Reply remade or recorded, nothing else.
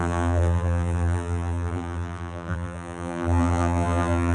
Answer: remade